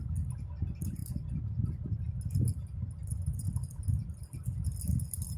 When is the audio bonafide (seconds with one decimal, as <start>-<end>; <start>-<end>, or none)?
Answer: 0.0-5.4